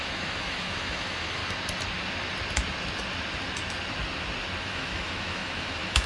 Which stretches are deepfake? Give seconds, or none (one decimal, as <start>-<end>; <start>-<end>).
0.0-1.4; 4.6-6.1